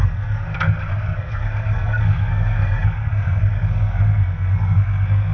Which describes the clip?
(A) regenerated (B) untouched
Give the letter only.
A